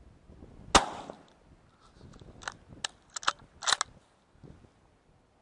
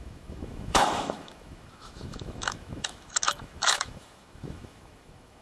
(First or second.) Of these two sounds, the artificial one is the second